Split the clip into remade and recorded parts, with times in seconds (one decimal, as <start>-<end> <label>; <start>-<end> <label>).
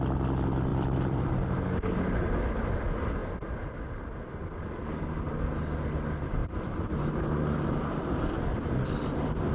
0.0-0.7 recorded; 0.7-1.3 remade; 1.3-6.4 recorded; 6.4-7.0 remade; 7.0-8.5 recorded; 8.5-9.5 remade